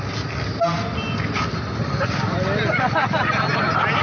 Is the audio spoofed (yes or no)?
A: no